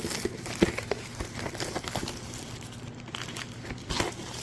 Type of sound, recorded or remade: recorded